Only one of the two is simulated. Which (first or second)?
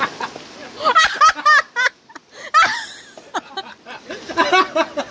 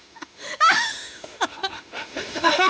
second